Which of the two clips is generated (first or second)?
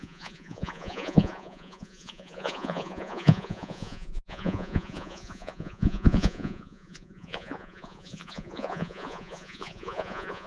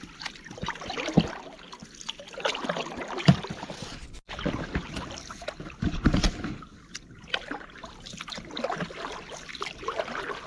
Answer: first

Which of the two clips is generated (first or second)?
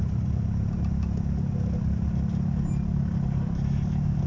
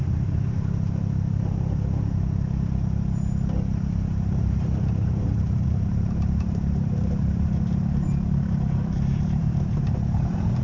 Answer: second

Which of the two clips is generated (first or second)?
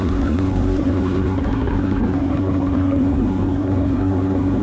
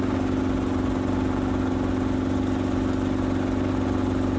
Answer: first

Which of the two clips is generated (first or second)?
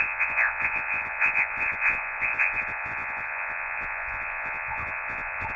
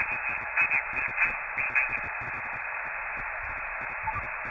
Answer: first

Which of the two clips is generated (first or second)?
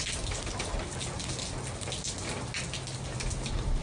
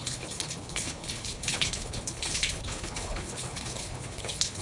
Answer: second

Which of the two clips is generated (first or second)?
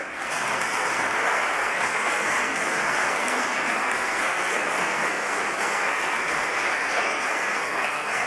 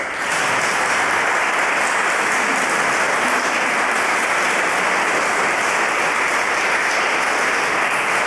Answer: first